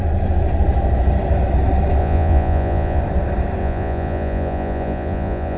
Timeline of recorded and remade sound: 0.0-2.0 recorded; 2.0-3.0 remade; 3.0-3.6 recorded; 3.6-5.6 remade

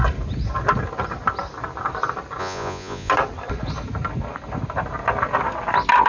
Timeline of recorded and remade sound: 0.0-2.4 recorded; 2.4-3.1 remade; 3.1-6.1 recorded

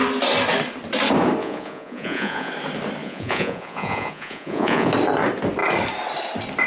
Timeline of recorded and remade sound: 0.0-1.4 recorded; 1.4-2.5 remade; 2.5-3.0 recorded; 3.0-4.9 remade; 4.9-6.7 recorded

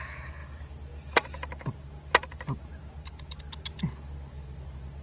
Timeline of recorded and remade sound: 0.0-5.0 recorded

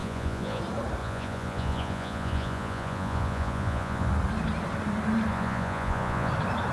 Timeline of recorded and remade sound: 0.0-0.6 remade; 0.6-1.0 recorded; 1.0-4.1 remade; 4.1-5.3 recorded; 5.3-6.3 remade; 6.3-6.7 recorded

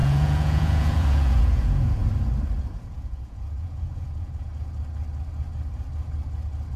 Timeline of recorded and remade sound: 0.0-2.0 remade; 2.0-2.7 recorded; 2.7-4.5 remade; 4.5-6.8 recorded